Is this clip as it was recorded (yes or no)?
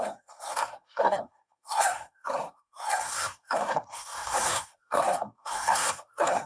no